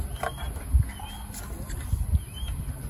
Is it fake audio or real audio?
real